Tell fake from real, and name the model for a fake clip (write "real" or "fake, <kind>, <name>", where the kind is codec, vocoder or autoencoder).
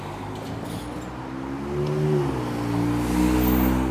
real